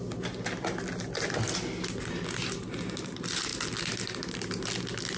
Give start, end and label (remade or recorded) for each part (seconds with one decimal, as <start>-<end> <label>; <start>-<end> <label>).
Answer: 0.0-5.2 recorded

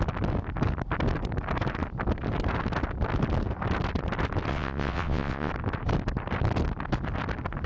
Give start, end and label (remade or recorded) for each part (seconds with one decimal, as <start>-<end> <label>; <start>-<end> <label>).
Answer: 0.0-4.5 recorded; 4.5-5.5 remade; 5.5-7.7 recorded